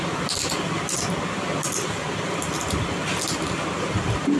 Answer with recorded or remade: recorded